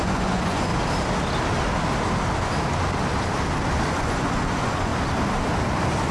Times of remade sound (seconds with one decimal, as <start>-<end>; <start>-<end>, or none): 0.0-0.7; 3.9-4.9